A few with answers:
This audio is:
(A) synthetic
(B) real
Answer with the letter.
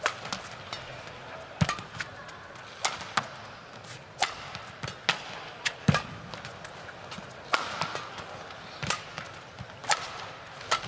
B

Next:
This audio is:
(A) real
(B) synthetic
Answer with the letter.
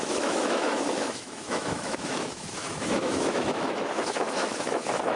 B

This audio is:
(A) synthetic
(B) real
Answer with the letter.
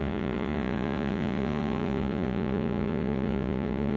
A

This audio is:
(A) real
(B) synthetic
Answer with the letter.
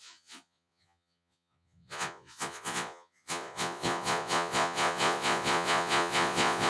B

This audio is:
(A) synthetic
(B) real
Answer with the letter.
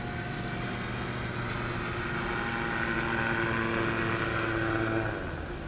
B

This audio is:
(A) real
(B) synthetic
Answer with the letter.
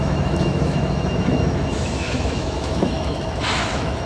B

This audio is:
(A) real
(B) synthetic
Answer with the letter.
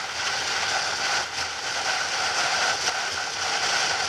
A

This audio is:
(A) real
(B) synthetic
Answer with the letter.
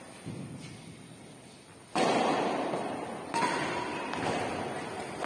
A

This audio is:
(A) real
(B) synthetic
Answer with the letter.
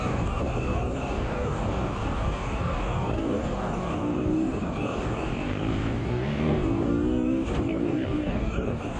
B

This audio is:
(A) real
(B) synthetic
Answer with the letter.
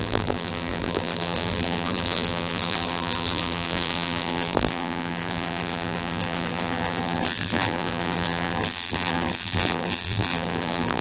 B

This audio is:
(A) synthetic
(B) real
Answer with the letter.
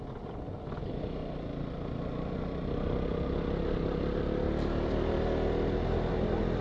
B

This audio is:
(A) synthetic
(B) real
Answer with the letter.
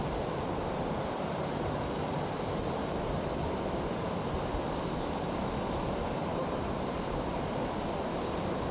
B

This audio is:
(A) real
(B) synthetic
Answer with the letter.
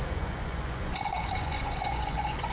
B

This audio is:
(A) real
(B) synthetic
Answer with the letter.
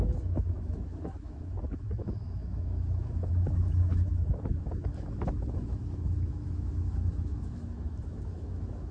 B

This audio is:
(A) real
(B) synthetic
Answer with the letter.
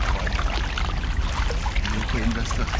A